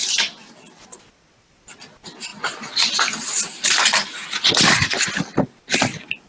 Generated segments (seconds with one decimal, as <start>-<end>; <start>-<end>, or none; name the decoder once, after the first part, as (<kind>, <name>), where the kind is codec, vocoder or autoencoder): none